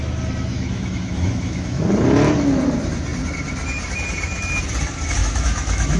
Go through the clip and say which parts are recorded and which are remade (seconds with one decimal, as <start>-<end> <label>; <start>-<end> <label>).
0.0-0.5 recorded; 0.5-1.8 remade; 1.8-5.2 recorded; 5.2-6.0 remade